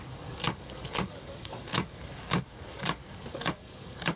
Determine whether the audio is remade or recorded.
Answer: remade